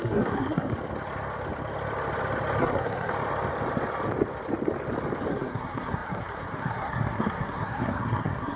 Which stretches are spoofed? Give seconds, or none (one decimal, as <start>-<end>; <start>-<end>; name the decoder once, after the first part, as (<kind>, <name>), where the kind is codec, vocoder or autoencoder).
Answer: 0.0-0.7 (codec, SNAC); 2.6-3.1; 5.3-8.6